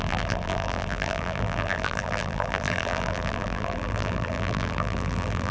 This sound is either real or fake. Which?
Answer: fake